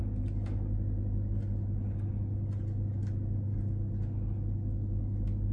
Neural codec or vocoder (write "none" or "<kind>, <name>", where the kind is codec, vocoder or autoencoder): none